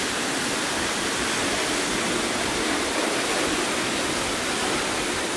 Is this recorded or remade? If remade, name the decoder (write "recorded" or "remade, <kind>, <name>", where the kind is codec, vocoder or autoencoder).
recorded